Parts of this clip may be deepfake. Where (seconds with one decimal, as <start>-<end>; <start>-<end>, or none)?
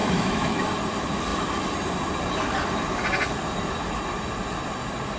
0.0-0.6